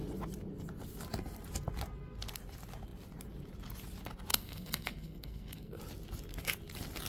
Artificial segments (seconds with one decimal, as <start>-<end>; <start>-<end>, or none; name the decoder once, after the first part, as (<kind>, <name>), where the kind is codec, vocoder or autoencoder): 4.3-5.8 (codec, SNAC)